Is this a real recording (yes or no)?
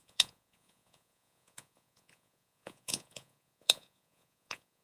no